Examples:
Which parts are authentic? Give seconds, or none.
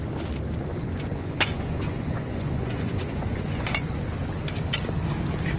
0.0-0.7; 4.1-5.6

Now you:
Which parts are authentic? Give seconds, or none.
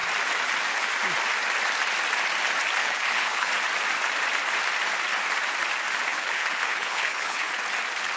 0.0-2.8; 3.5-6.1; 7.5-8.2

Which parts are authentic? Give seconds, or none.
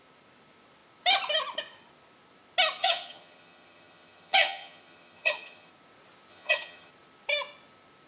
0.0-2.8; 5.7-6.3; 6.9-8.1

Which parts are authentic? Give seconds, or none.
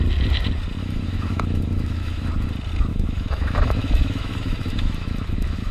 0.0-0.8; 2.3-2.9